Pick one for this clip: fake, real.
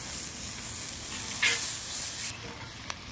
real